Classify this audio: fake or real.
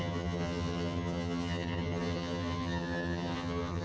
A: fake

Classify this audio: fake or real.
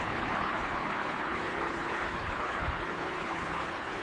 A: fake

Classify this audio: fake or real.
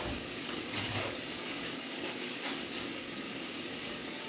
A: fake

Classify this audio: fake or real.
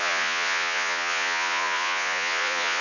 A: fake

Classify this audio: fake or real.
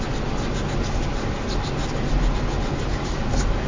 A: real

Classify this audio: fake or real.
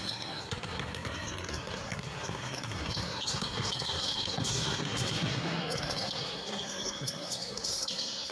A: fake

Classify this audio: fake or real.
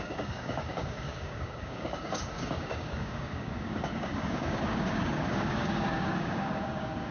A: fake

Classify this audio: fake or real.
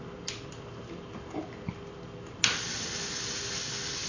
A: real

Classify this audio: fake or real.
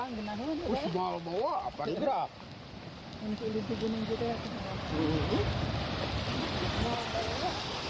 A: real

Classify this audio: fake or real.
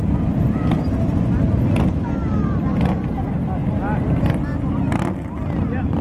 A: real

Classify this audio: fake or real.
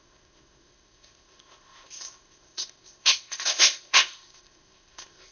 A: fake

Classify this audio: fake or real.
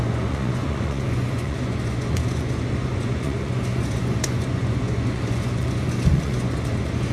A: fake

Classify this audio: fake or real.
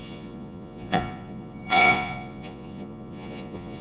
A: fake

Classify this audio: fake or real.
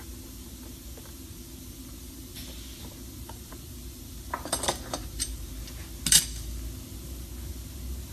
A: real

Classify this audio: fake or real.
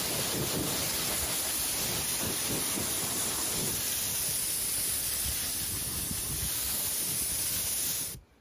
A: real